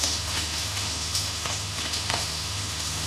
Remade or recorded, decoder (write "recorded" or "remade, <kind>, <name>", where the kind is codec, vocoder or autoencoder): remade, autoencoder, DAC-VAE